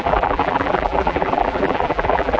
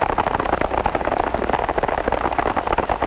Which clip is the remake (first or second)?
first